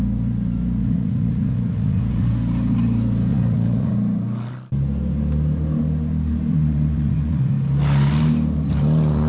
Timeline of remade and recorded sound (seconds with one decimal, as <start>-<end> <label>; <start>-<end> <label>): 0.0-0.8 recorded; 0.8-2.3 remade; 2.3-3.3 recorded; 3.3-3.9 remade; 3.9-6.5 recorded; 6.5-7.5 remade; 7.5-9.3 recorded